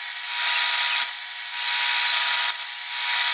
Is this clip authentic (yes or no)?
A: yes